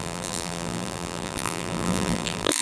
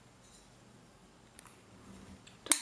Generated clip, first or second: first